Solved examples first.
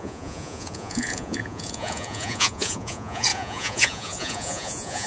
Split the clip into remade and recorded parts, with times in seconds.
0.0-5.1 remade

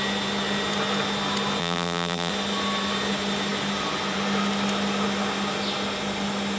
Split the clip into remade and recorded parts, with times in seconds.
0.0-1.6 recorded; 1.6-2.3 remade; 2.3-6.6 recorded

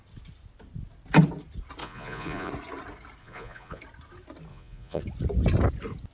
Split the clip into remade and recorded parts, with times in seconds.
0.0-1.8 recorded; 1.8-2.5 remade; 2.5-3.2 recorded; 3.2-3.8 remade; 3.8-4.5 recorded; 4.5-5.0 remade; 5.0-6.1 recorded

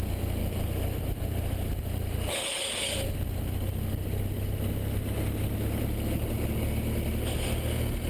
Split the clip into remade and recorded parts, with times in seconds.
0.0-0.4 recorded; 0.4-1.2 remade; 1.2-8.1 recorded

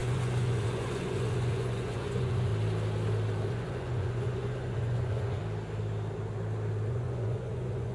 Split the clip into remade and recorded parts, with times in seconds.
0.0-2.5 remade; 2.5-3.5 recorded; 3.5-5.4 remade; 5.4-6.9 recorded; 6.9-7.9 remade

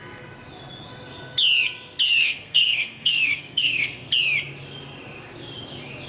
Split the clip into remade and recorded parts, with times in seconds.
0.0-2.2 recorded; 2.2-4.1 remade; 4.1-6.1 recorded

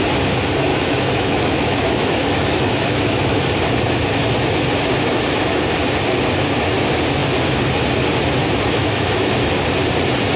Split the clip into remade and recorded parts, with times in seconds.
0.0-0.7 recorded; 0.7-3.4 remade; 3.4-8.8 recorded; 8.8-9.5 remade; 9.5-10.4 recorded